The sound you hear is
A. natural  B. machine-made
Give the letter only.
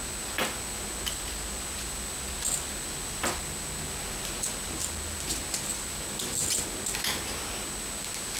A